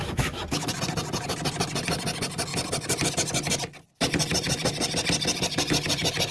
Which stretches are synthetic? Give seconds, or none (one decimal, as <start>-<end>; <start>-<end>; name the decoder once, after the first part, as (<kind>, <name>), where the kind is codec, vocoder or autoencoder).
0.0-0.8 (autoencoder, DAC-VAE)